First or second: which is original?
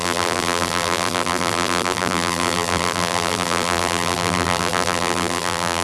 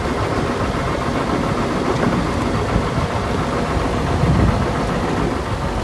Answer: second